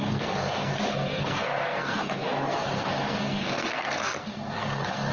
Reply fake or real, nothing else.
fake